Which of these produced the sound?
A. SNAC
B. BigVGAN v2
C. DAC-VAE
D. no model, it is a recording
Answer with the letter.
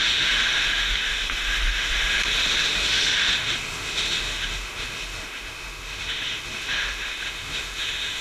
C